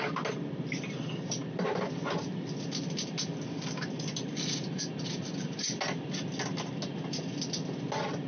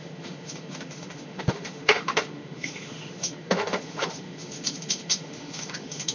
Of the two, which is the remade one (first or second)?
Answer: second